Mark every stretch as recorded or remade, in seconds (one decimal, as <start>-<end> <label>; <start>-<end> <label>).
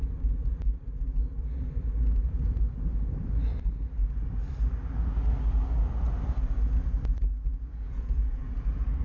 0.0-7.5 recorded; 7.5-8.5 remade; 8.5-9.0 recorded